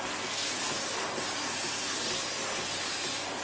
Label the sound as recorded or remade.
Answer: recorded